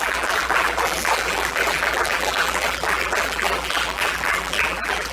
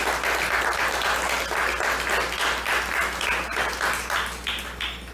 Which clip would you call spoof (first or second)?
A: first